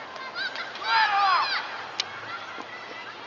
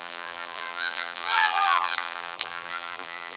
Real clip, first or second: first